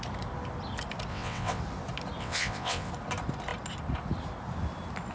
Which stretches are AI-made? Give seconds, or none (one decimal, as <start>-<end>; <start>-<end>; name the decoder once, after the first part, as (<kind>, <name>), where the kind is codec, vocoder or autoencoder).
1.1-1.6 (vocoder, WaveNeXt); 2.2-2.9